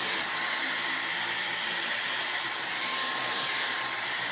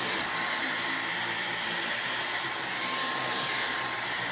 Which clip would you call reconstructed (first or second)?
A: first